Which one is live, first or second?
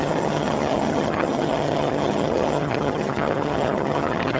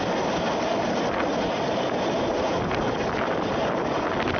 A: second